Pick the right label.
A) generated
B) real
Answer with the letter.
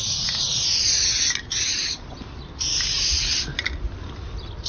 B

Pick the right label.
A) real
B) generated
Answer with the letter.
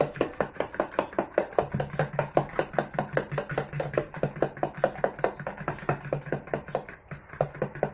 A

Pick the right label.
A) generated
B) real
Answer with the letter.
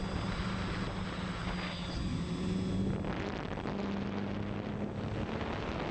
B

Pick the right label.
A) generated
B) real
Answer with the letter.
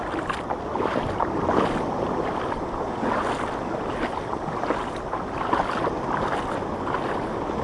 B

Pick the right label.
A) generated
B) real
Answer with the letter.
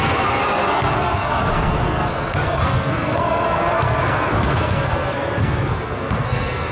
A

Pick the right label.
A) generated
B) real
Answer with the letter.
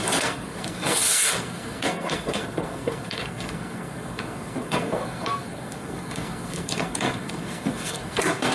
A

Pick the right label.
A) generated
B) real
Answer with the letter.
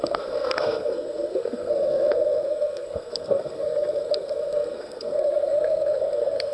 A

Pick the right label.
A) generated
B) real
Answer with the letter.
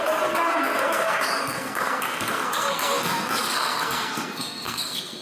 A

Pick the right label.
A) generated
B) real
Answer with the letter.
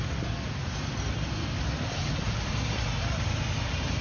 B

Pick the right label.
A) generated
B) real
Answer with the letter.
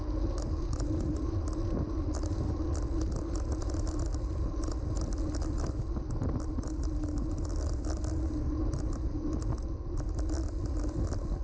B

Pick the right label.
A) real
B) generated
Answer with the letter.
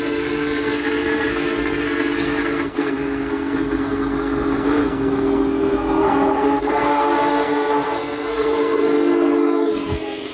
B